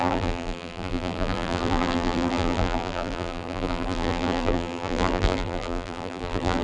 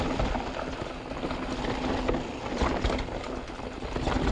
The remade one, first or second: first